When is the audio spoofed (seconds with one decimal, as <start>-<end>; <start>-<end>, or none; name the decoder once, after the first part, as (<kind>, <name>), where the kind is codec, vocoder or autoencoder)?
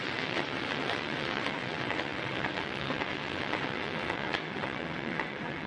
0.0-5.7 (vocoder, WaveNeXt)